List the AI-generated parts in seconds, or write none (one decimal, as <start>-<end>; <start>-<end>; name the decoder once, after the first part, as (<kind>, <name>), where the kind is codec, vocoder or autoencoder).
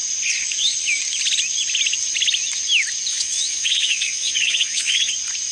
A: 3.1-5.1 (vocoder, Vocos)